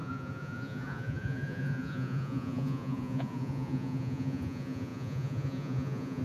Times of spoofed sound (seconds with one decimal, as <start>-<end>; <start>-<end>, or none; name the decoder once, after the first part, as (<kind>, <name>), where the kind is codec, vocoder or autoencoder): 0.0-6.2 (vocoder, Vocos)